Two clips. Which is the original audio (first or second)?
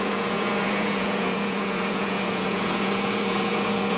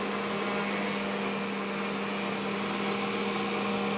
second